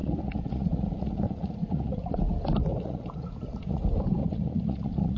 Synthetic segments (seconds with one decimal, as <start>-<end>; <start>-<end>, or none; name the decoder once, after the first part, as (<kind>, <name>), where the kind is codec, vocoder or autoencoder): 0.0-2.2 (vocoder, Vocos); 2.7-3.8; 4.2-5.2